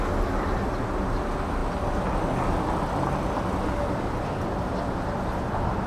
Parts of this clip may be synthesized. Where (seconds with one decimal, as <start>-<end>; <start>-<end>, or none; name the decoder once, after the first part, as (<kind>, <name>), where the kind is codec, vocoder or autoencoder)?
none